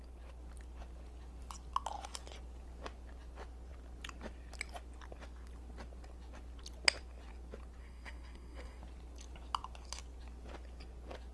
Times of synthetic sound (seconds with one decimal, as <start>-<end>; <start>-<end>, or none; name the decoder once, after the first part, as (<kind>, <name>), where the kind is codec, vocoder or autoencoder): 7.8-8.8 (codec, SNAC)